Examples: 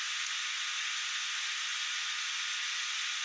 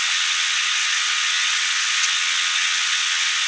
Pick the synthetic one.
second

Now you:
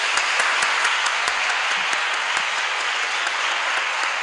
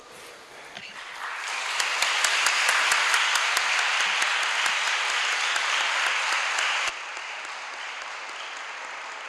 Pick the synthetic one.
first